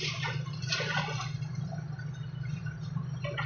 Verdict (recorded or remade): recorded